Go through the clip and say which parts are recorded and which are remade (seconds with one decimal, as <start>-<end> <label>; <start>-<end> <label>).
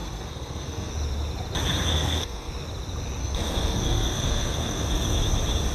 0.0-0.9 remade; 0.9-1.9 recorded; 1.9-2.5 remade; 2.5-3.2 recorded; 3.2-5.2 remade; 5.2-5.7 recorded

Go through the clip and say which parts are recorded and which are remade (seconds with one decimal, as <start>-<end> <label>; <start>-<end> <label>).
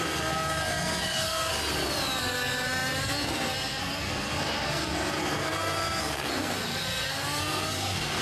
0.0-1.5 remade; 1.5-2.2 recorded; 2.2-8.2 remade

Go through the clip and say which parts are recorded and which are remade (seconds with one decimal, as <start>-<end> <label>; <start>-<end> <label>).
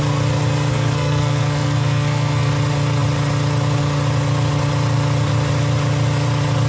0.0-0.7 recorded; 0.7-2.5 remade; 2.5-6.7 recorded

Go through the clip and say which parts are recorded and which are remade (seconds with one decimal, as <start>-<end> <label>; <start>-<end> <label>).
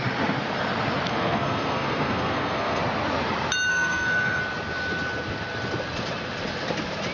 0.0-1.1 recorded; 1.1-2.8 remade; 2.8-3.7 recorded; 3.7-4.4 remade; 4.4-7.1 recorded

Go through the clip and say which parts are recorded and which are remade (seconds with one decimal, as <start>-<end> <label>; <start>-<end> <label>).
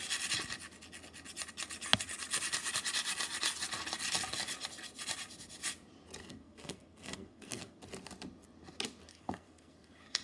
0.0-6.2 recorded; 6.2-7.8 remade; 7.8-9.1 recorded; 9.1-10.2 remade